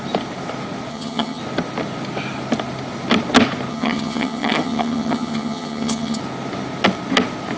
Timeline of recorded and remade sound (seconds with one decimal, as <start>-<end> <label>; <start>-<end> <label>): 0.0-0.9 recorded; 0.9-1.4 remade; 1.4-3.7 recorded; 3.7-6.2 remade; 6.2-7.6 recorded